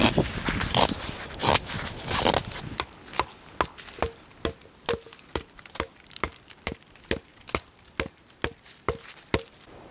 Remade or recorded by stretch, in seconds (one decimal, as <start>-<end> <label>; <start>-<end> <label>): 0.0-1.4 recorded; 1.4-3.0 remade; 3.0-4.6 recorded; 4.6-6.2 remade; 6.2-9.9 recorded